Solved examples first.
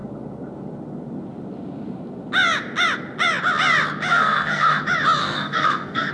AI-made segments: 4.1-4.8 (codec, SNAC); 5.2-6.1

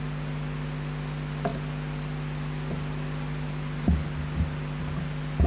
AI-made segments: none

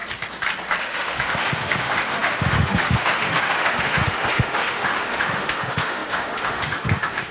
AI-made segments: 0.8-7.3 (autoencoder, DAC-VAE)

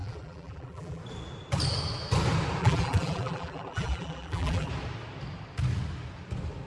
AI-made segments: 0.0-1.0 (vocoder, BigVGAN v2); 2.6-4.7